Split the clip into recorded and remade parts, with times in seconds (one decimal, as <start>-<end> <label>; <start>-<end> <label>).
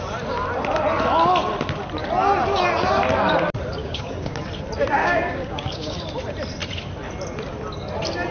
0.0-3.8 recorded; 3.8-4.4 remade; 4.4-5.0 recorded; 5.0-6.0 remade; 6.0-8.3 recorded